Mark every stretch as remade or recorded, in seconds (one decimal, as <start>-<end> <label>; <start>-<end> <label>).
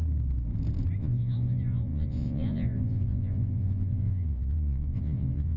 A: 0.0-1.0 recorded; 1.0-5.6 remade